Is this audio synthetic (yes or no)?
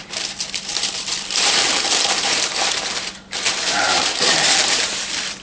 yes